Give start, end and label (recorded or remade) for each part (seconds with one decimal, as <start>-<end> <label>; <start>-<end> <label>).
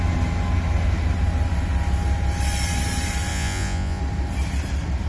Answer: 0.0-3.3 recorded; 3.3-4.0 remade; 4.0-5.1 recorded